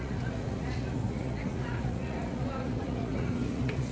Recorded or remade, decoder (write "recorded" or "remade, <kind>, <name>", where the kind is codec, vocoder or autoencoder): remade, vocoder, Vocos